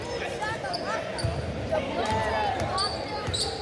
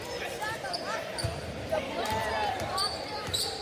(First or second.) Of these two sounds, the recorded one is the first